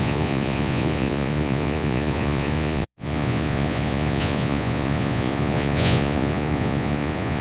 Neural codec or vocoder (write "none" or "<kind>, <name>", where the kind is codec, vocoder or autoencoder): vocoder, Vocos